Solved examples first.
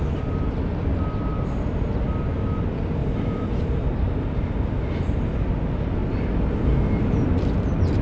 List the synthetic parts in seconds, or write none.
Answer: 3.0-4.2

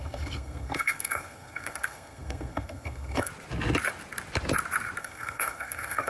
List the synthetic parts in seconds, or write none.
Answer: 0.0-3.3; 5.0-6.1

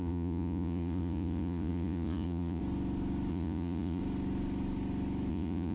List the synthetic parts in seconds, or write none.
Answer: 0.0-2.6; 3.3-4.0; 5.3-5.7